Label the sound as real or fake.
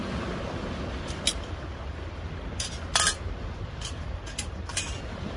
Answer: real